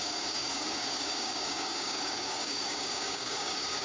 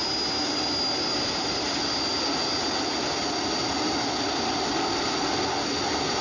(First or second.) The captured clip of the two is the second